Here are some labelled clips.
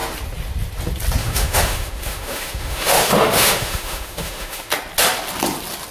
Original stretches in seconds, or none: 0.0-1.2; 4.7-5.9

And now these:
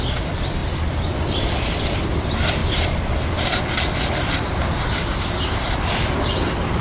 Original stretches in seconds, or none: 0.0-6.8

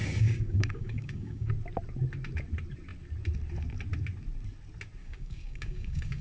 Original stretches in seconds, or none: 1.5-5.0